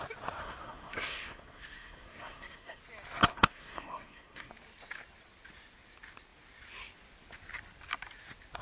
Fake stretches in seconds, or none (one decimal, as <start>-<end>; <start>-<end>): 0.4-2.8; 3.3-4.5